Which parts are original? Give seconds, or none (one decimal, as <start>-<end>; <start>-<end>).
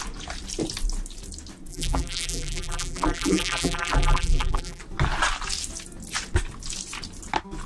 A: 0.0-1.7; 4.8-7.7